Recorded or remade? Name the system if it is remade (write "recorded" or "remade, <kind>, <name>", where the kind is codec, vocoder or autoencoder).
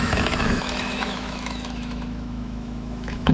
remade, autoencoder, DAC-VAE